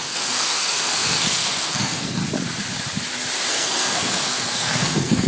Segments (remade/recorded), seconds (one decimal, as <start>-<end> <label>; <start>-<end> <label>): 0.0-2.2 remade; 2.2-3.5 recorded; 3.5-5.3 remade